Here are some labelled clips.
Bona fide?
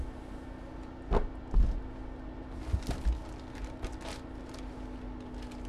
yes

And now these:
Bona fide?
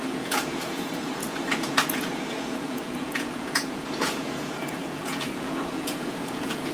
no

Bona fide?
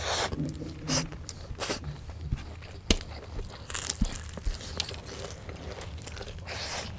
yes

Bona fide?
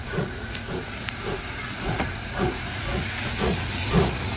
no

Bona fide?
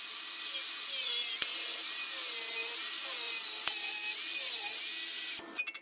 yes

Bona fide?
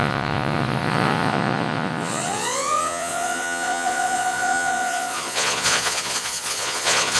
no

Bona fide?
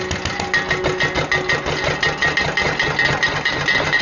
yes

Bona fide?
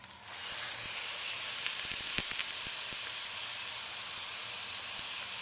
yes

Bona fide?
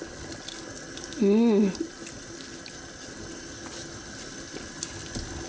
yes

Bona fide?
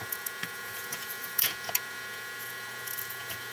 no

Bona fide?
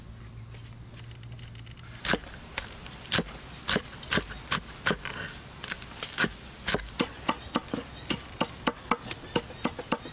yes